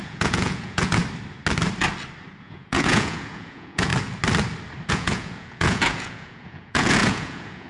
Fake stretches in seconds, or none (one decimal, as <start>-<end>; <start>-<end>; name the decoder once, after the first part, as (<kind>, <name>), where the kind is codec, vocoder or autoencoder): 0.0-1.0 (vocoder, Vocos); 2.4-3.9; 4.9-7.7